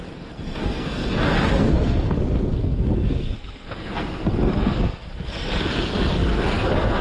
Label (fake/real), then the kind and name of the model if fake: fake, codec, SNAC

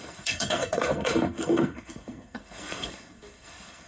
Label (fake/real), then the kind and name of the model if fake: fake, codec, SNAC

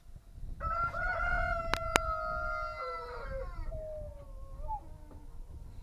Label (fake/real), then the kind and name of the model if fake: real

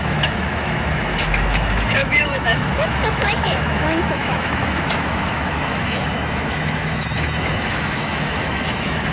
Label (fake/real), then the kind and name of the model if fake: fake, autoencoder, DAC-VAE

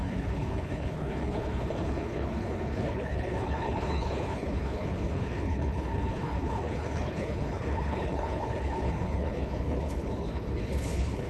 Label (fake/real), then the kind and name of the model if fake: fake, codec, HILCodec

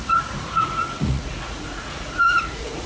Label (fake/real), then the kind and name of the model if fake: fake, vocoder, Vocos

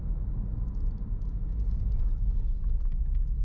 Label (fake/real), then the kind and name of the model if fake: real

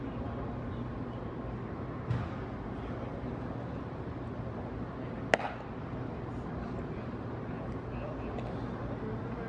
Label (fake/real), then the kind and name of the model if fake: real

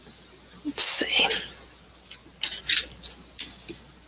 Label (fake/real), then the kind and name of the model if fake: real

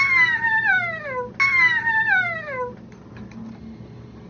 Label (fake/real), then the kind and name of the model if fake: real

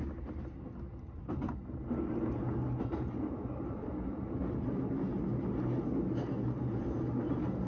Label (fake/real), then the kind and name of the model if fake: real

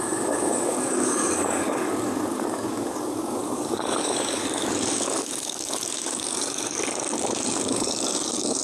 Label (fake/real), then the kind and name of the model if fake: fake, codec, DAC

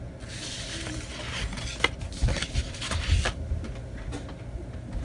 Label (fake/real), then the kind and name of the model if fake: real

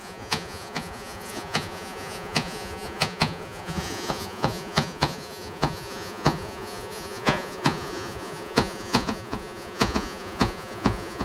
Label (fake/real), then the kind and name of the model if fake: fake, vocoder, Vocos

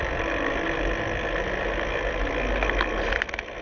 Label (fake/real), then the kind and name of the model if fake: real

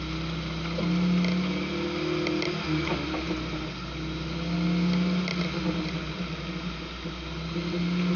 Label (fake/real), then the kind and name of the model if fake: real